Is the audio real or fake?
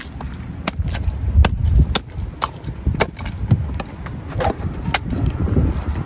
real